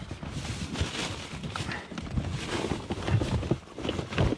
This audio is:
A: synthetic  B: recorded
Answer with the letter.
B